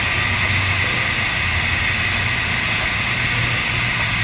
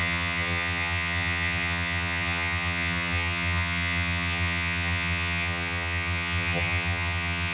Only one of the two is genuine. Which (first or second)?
first